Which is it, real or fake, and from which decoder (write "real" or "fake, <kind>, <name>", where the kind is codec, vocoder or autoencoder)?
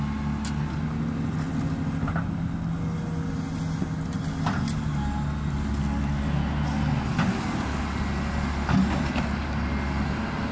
real